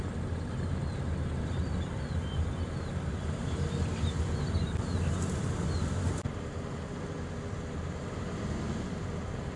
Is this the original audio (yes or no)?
yes